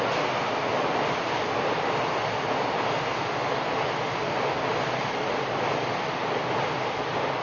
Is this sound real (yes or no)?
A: yes